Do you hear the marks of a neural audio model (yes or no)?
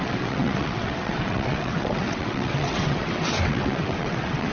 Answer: yes